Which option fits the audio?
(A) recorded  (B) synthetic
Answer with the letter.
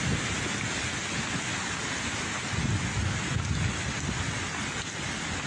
A